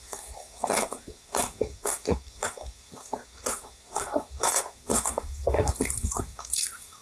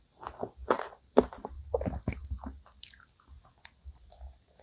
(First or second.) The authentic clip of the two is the second